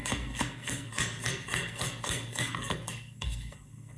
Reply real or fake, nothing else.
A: fake